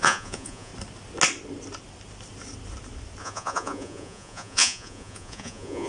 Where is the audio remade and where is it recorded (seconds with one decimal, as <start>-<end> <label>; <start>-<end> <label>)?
0.0-0.7 remade; 0.7-3.2 recorded; 3.2-5.9 remade